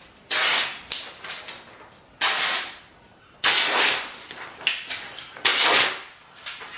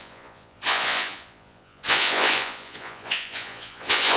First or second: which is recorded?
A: first